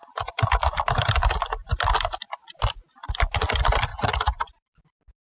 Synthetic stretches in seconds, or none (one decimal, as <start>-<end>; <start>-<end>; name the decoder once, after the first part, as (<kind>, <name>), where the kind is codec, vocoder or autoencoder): 3.9-4.5 (vocoder, Vocos)